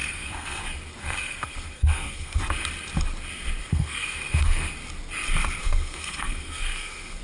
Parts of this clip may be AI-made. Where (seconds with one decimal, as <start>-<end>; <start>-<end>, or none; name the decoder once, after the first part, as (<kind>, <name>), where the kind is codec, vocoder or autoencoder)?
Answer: 0.0-0.6 (codec, SNAC); 1.0-2.4; 3.6-4.7; 5.6-7.2